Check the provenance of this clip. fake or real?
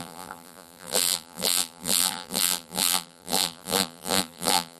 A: fake